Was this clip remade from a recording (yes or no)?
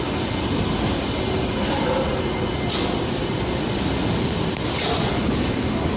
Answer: no